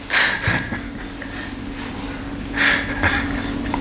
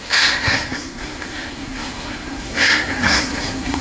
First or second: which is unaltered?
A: first